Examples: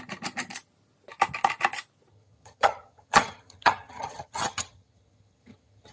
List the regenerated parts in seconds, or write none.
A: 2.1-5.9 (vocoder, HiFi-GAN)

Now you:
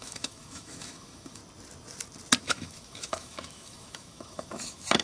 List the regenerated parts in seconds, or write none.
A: 0.0-1.4 (autoencoder, DAC-VAE); 2.4-5.0

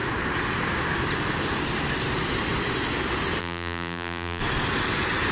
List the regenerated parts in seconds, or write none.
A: 3.4-4.4 (vocoder, BigVGAN v2)